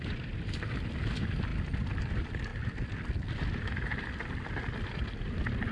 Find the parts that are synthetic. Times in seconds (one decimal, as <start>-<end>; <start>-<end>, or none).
none